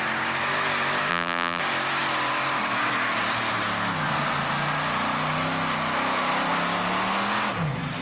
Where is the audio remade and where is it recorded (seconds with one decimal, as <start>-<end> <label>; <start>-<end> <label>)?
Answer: 0.0-1.1 recorded; 1.1-1.6 remade; 1.6-8.0 recorded